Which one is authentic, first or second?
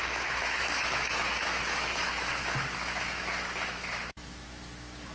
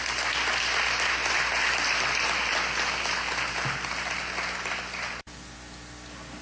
second